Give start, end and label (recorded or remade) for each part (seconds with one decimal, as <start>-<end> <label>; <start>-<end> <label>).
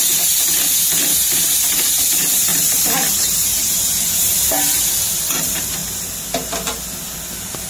0.0-2.5 remade; 2.5-3.1 recorded; 3.1-5.8 remade; 5.8-7.7 recorded